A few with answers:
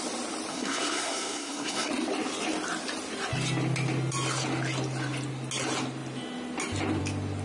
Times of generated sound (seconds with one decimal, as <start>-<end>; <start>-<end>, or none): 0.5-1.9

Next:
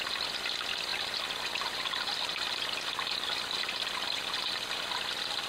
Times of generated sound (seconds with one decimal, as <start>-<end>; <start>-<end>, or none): none

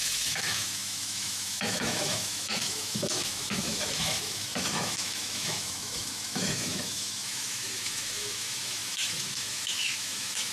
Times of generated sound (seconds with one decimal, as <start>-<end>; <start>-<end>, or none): 0.0-10.5

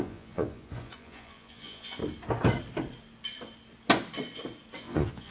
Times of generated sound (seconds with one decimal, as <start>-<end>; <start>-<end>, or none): 0.0-2.0; 4.8-5.3

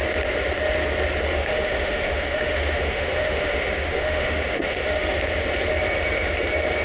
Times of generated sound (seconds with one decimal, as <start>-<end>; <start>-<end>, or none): 1.4-5.0

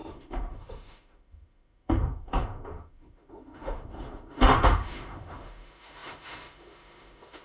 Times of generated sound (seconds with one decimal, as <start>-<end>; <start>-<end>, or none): 0.0-7.4